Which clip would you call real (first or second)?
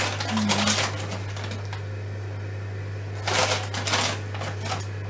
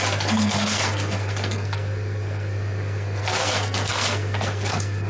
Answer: first